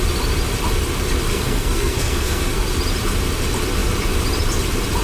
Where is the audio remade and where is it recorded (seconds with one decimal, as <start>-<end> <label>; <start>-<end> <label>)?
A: 0.0-1.3 recorded; 1.3-2.6 remade; 2.6-5.0 recorded

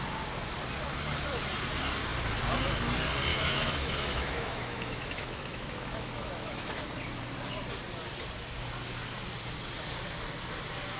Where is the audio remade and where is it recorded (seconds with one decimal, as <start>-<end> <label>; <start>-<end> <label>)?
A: 0.0-3.3 recorded; 3.3-6.8 remade; 6.8-11.0 recorded